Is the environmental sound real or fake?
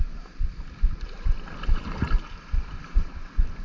real